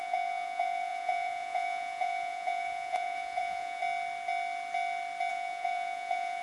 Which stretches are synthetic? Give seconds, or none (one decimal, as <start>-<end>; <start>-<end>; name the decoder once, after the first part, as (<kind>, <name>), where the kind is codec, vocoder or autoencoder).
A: 0.0-3.8 (vocoder, Vocos); 5.3-6.4